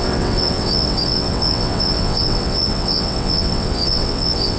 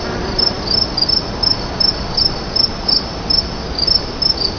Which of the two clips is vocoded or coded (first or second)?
first